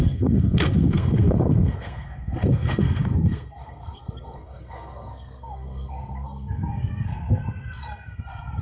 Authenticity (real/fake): fake